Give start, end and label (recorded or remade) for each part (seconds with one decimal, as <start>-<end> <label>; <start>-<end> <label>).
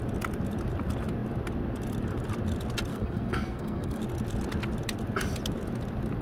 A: 0.0-2.9 recorded; 2.9-4.0 remade; 4.0-6.2 recorded